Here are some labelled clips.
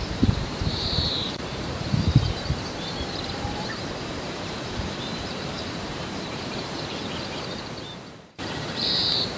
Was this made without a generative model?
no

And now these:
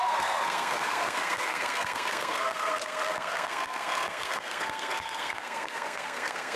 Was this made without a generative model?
no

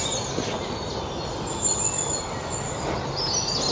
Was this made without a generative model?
yes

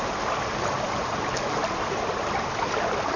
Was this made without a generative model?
yes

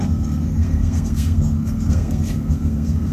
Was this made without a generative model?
no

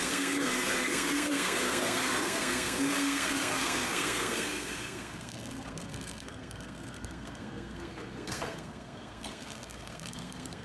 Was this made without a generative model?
no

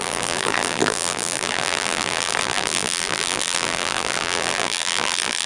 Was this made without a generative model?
no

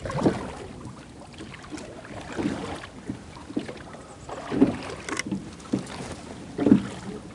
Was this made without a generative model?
yes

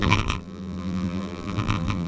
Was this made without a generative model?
no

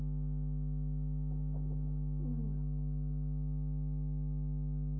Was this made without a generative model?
yes